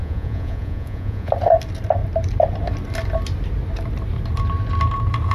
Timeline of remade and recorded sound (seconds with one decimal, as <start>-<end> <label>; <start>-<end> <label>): 0.0-1.3 remade; 1.3-5.3 recorded